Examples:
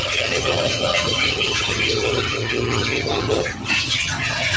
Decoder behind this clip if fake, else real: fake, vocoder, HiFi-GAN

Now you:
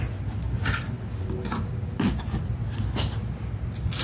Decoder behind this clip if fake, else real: real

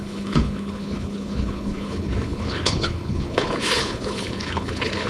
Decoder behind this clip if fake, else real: fake, codec, HILCodec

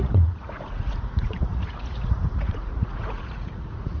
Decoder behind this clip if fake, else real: fake, vocoder, Vocos